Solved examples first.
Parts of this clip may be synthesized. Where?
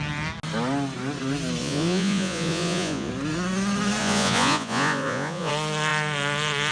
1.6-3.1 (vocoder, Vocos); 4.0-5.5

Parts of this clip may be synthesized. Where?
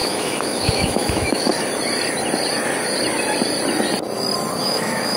0.0-1.5 (autoencoder, DAC-VAE); 4.6-5.2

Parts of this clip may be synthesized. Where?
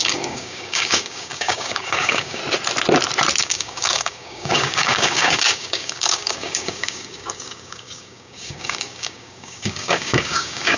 0.0-2.4 (codec, DAC); 3.4-10.8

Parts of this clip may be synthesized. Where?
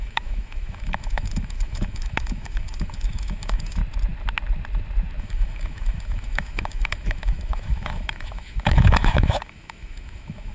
0.0-3.8 (autoencoder, DAC-VAE); 5.2-10.5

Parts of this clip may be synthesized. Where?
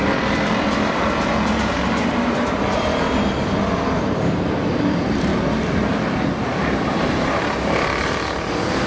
0.0-2.9 (vocoder, BigVGAN v2); 3.6-5.3; 6.4-8.9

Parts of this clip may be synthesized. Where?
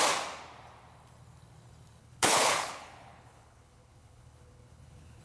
2.0-5.2 (codec, HILCodec)